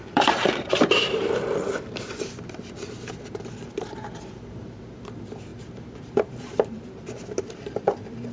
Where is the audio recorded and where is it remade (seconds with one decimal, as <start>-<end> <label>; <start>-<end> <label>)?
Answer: 0.0-2.2 remade; 2.2-5.5 recorded; 5.5-8.3 remade